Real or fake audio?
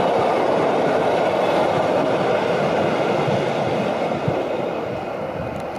real